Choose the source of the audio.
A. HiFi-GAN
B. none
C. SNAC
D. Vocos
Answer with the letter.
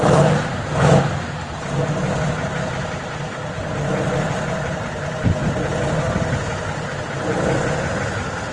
B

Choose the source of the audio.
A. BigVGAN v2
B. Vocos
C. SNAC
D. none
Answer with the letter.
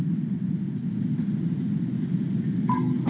D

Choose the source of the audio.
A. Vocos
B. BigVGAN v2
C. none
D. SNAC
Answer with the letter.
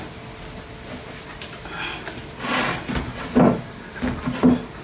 C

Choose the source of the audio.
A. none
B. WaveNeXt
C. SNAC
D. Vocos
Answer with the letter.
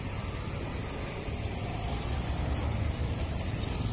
A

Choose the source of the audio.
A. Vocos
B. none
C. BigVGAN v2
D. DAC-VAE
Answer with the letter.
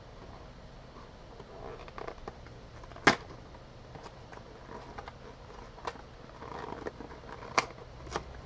B